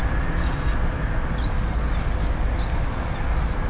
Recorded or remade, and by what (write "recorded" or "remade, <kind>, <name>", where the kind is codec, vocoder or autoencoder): recorded